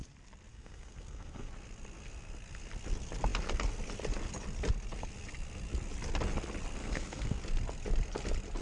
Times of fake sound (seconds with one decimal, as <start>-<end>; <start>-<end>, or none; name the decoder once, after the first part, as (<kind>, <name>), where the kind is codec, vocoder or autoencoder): 0.5-1.5 (codec, SNAC); 6.8-7.4

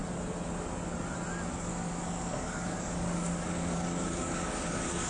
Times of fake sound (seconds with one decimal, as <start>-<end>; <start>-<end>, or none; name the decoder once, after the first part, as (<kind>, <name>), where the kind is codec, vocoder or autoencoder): 1.5-5.1 (codec, DAC)

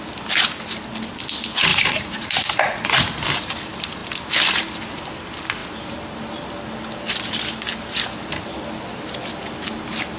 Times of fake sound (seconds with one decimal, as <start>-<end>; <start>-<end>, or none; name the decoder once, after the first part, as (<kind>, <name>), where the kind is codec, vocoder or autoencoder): 1.7-3.0 (vocoder, Vocos)

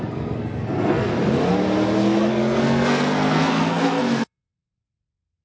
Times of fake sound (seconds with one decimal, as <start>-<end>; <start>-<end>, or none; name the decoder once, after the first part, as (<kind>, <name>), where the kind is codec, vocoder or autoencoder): 0.0-1.1 (codec, SNAC); 2.3-5.4

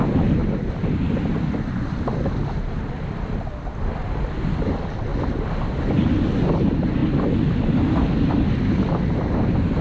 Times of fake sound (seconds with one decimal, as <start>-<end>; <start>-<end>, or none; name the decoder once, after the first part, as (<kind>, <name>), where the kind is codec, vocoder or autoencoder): none

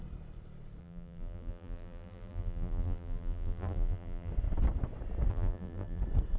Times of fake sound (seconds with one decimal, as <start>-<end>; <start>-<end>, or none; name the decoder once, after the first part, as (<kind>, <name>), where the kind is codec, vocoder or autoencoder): 0.8-4.3 (vocoder, BigVGAN v2); 5.3-6.0